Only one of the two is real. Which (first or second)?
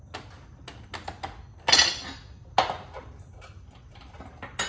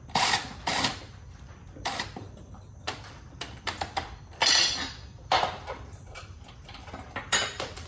first